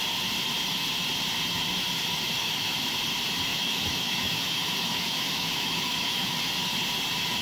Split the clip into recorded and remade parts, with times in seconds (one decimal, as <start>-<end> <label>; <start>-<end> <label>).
0.0-2.4 recorded; 2.4-2.9 remade; 2.9-3.5 recorded; 3.5-6.4 remade; 6.4-7.4 recorded